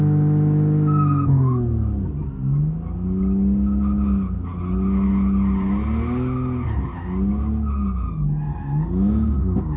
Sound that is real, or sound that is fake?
real